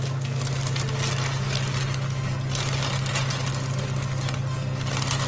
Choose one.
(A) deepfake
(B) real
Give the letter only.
B